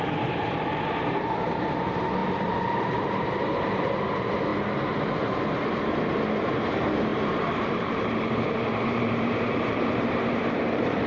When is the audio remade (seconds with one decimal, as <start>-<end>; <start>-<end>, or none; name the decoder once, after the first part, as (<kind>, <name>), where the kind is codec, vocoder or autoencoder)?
0.0-4.5 (vocoder, BigVGAN v2); 6.0-11.1